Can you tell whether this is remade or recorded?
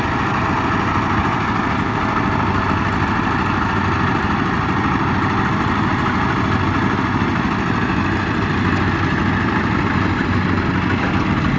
recorded